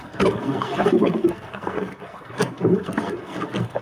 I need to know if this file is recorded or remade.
remade